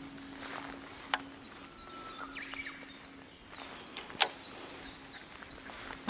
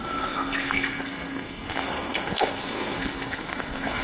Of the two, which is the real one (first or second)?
first